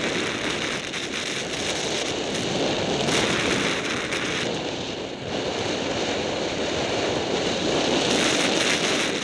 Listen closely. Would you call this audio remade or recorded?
remade